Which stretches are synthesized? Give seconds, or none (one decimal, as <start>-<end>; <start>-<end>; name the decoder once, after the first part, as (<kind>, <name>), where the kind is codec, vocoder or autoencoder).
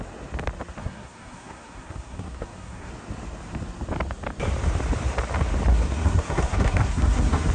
0.8-2.9 (codec, SNAC); 5.7-7.5